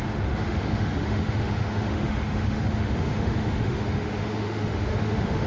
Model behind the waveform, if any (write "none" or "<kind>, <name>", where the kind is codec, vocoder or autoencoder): autoencoder, DAC-VAE